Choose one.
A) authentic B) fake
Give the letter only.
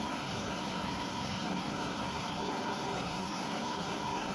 B